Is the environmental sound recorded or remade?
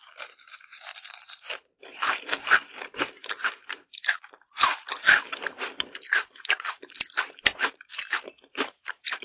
remade